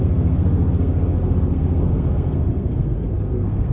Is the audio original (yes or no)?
no